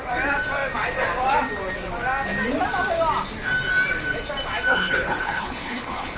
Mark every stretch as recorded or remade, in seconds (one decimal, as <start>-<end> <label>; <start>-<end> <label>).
0.0-4.7 recorded; 4.7-6.2 remade